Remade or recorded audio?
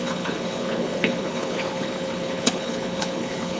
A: remade